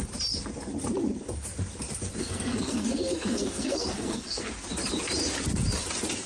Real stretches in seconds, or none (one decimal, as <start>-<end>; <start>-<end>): 0.0-2.2; 4.5-6.3